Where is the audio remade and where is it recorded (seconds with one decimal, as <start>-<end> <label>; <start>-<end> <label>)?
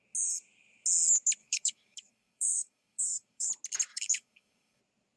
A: 0.0-1.4 recorded; 1.4-3.5 remade; 3.5-3.9 recorded; 3.9-4.8 remade; 4.8-5.2 recorded